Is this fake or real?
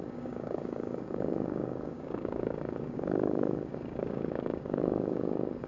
fake